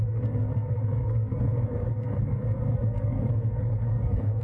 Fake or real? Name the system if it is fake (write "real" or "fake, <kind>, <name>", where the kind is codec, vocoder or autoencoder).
fake, codec, SNAC